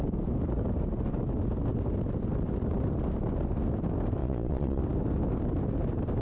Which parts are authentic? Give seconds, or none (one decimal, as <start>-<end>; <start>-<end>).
0.0-4.2; 4.8-6.2